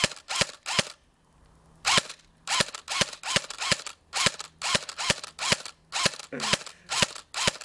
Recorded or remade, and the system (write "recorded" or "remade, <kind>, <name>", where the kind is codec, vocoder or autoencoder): recorded